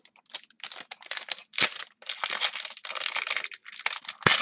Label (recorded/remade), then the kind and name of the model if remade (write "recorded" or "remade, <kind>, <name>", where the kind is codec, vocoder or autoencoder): recorded